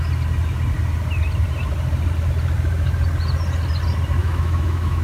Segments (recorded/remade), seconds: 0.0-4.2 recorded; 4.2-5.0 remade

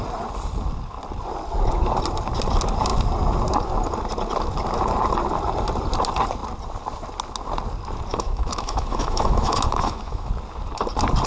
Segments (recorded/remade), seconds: 0.0-8.1 recorded; 8.1-10.3 remade; 10.3-11.3 recorded

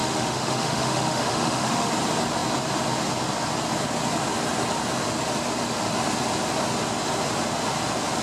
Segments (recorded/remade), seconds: 0.0-1.9 remade; 1.9-8.2 recorded